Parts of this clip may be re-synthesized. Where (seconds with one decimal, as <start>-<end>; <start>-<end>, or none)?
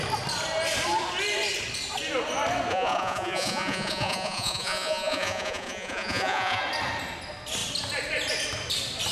2.7-6.6